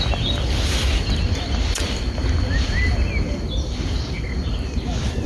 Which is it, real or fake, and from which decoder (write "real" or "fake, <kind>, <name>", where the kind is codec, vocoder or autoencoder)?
real